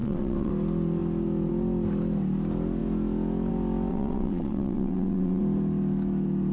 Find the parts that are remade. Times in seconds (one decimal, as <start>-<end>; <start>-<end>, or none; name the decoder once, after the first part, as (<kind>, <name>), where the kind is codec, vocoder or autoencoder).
0.0-0.5 (vocoder, WaveNeXt); 3.9-5.4